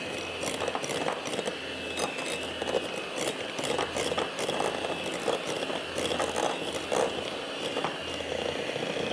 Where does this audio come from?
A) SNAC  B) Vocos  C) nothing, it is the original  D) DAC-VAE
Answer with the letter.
C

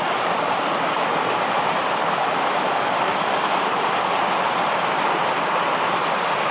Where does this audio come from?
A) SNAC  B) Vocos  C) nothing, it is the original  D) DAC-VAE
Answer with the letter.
C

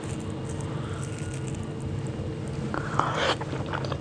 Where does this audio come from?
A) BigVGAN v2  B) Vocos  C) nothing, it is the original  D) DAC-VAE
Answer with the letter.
C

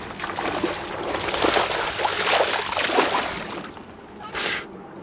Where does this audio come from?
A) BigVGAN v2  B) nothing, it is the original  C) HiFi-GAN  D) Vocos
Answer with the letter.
B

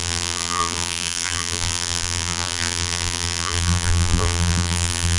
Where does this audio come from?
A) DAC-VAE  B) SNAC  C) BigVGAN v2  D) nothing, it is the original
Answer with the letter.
C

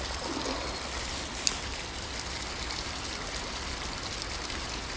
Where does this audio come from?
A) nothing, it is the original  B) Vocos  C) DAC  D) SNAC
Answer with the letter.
A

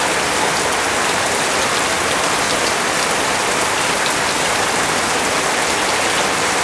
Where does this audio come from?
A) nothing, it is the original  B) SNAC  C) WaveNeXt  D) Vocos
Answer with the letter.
A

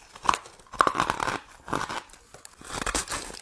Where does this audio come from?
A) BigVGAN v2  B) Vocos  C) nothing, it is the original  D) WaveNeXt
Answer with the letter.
C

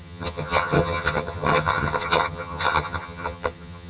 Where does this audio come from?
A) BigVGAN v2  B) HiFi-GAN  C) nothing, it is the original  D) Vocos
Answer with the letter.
B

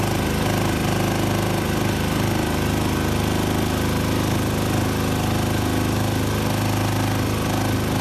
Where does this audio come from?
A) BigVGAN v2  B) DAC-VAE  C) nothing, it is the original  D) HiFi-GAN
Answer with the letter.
C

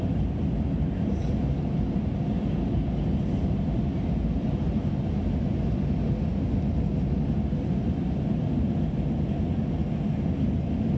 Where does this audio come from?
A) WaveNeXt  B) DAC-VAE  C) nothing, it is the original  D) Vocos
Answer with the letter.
C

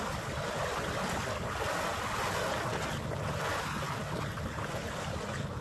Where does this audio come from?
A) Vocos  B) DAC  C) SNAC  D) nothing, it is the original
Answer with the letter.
D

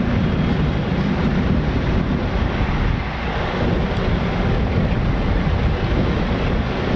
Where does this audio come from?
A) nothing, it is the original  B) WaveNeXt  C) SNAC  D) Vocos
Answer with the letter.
A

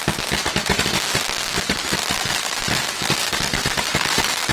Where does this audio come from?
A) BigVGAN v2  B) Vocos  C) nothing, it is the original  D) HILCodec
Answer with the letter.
C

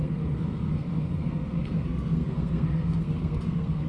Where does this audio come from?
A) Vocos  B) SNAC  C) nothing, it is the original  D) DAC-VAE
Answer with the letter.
B